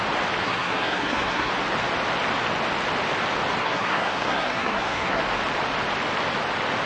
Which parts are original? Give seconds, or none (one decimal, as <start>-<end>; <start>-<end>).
0.0-0.4; 1.5-3.6; 5.2-6.9